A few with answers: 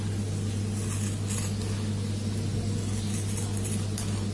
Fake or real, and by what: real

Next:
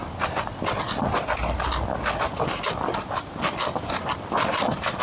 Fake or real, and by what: fake, vocoder, BigVGAN v2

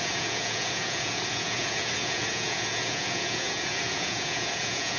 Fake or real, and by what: fake, vocoder, Vocos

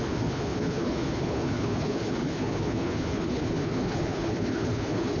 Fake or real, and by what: fake, codec, HILCodec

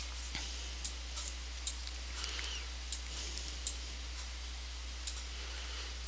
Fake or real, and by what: real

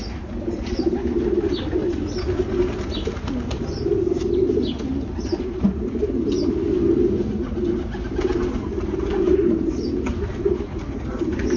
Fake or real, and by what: real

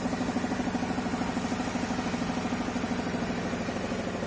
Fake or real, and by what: real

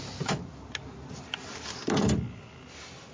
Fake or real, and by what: real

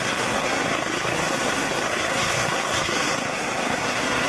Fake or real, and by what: fake, codec, SNAC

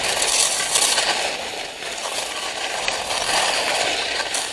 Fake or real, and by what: real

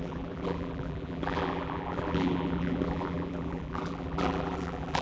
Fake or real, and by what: fake, vocoder, BigVGAN v2